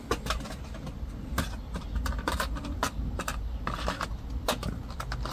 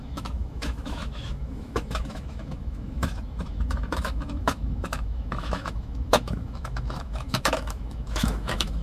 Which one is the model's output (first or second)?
second